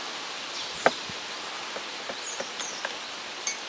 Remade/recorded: recorded